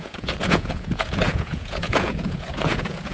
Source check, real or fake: fake